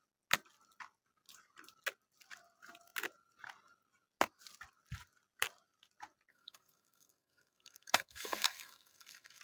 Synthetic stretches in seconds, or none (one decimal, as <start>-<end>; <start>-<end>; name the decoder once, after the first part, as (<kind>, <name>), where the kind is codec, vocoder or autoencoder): 6.3-9.4 (codec, SNAC)